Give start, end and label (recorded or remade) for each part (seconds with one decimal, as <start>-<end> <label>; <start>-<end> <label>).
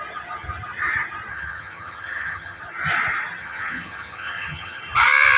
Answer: 0.0-1.3 recorded; 1.3-2.6 remade; 2.6-3.4 recorded; 3.4-4.8 remade; 4.8-5.4 recorded